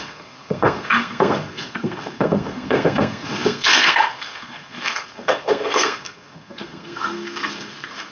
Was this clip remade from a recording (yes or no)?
yes